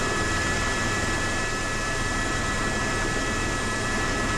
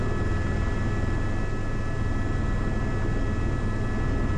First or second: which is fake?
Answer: first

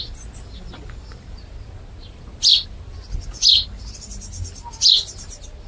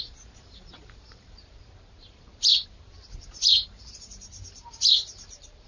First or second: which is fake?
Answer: second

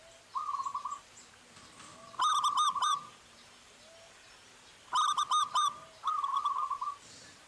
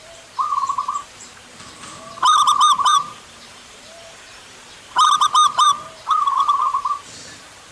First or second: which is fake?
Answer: second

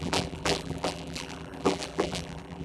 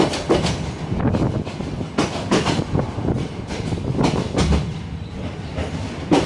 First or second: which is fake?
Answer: first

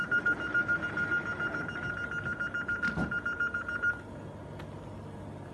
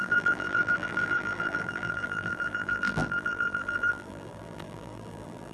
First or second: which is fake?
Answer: second